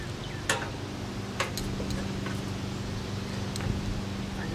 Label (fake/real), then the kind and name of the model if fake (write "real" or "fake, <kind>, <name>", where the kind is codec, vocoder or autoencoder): real